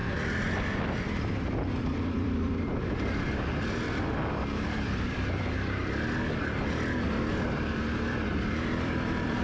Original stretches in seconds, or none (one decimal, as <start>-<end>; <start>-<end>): 0.0-0.8; 5.8-6.4